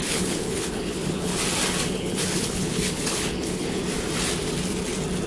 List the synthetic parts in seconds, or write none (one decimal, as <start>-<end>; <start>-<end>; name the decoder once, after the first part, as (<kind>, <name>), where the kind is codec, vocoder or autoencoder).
0.0-1.3 (codec, HILCodec); 1.9-3.8